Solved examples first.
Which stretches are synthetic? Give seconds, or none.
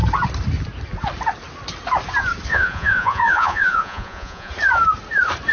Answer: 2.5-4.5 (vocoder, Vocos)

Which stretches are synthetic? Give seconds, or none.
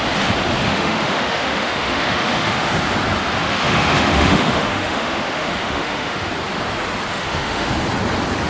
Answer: 0.6-2.7 (autoencoder, DAC-VAE); 3.4-6.3; 7.1-7.7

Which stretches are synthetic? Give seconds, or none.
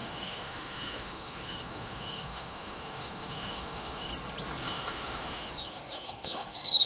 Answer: 0.0-4.1 (autoencoder, DAC-VAE); 4.6-6.9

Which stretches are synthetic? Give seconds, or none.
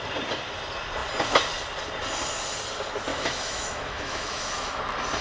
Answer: 3.1-4.8 (autoencoder, DAC-VAE)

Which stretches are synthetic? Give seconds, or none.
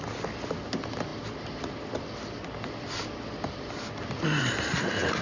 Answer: none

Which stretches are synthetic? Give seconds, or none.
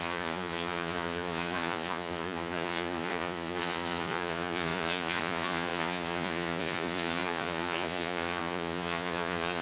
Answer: 0.0-9.6 (vocoder, Vocos)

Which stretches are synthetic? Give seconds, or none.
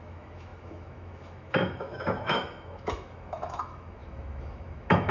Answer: 0.0-5.1 (autoencoder, DAC-VAE)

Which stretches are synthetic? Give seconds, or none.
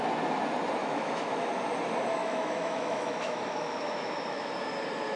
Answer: 0.8-1.5 (autoencoder, DAC-VAE); 2.2-4.5